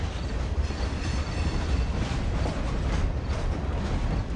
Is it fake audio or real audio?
real